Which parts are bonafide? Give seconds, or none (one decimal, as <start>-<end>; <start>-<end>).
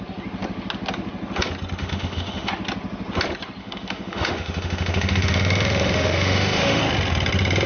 0.0-1.8; 2.5-3.6; 6.8-7.7